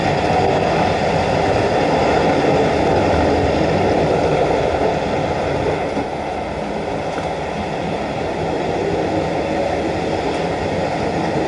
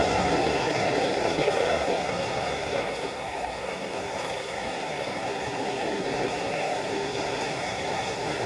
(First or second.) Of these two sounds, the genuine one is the first